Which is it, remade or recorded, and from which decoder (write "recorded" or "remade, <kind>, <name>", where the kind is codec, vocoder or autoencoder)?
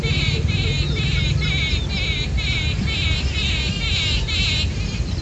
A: recorded